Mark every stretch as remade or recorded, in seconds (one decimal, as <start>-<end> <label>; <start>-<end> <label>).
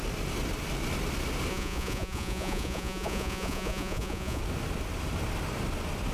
0.0-1.5 recorded; 1.5-4.4 remade; 4.4-6.1 recorded